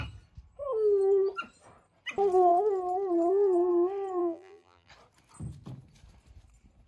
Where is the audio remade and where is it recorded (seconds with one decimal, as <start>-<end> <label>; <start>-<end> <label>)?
0.0-4.2 recorded; 4.2-4.9 remade; 4.9-6.9 recorded